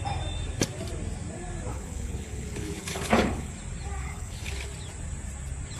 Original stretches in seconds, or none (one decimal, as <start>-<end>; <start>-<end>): 0.0-1.7; 3.5-4.0; 4.5-5.8